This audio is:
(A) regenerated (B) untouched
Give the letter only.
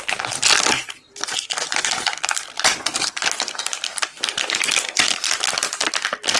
B